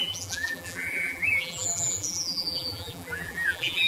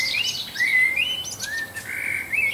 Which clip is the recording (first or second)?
second